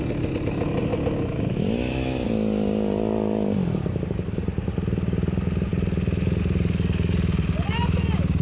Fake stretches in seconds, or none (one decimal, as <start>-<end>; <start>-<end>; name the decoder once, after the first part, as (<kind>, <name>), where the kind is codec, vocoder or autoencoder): 5.7-6.4 (vocoder, BigVGAN v2)